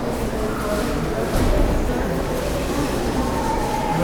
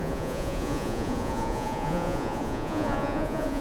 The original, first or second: first